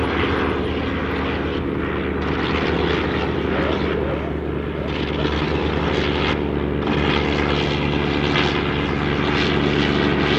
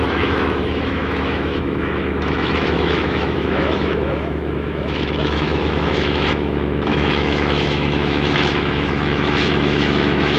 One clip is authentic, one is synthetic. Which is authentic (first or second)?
first